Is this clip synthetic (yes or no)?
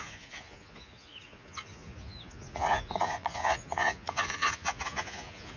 yes